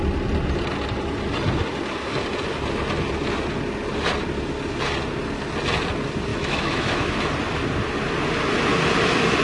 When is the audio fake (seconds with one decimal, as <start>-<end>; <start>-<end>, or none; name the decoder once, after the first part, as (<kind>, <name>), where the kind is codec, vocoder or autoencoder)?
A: 6.3-7.1 (autoencoder, DAC-VAE)